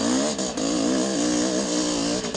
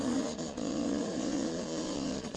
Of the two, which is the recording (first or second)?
first